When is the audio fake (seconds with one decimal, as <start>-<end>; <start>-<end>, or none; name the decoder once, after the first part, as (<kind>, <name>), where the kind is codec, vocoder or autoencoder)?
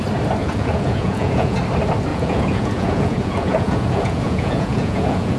0.4-1.6 (vocoder, Vocos); 2.1-5.4